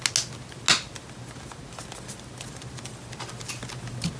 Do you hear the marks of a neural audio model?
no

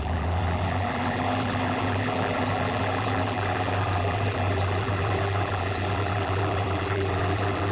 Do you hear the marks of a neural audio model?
yes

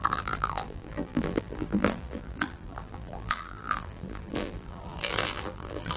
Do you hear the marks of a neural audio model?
yes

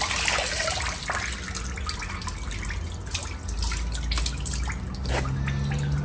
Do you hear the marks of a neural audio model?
no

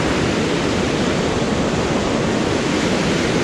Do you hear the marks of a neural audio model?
no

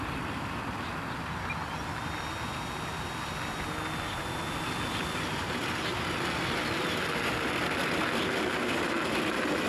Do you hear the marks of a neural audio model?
no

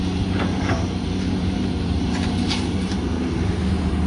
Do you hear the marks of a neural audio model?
yes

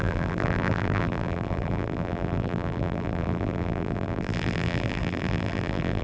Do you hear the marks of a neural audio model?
yes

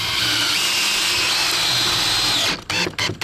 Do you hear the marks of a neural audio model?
no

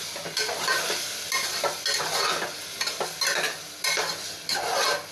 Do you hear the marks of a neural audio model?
no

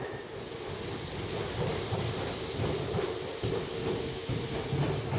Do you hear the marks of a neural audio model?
no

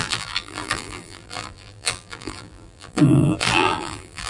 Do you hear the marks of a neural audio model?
yes